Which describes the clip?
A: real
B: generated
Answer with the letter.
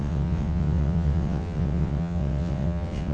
B